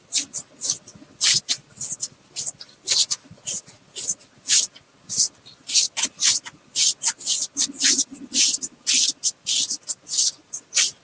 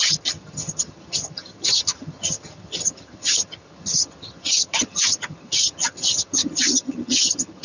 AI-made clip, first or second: second